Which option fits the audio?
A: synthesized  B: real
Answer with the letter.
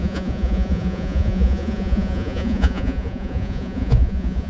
A